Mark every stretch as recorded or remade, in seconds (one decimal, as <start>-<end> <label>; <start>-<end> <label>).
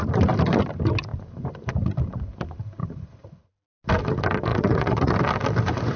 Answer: 0.0-2.8 recorded; 2.8-3.5 remade; 3.5-4.5 recorded; 4.5-5.1 remade; 5.1-6.0 recorded